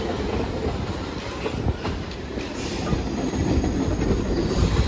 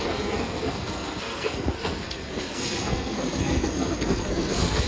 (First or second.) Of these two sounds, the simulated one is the second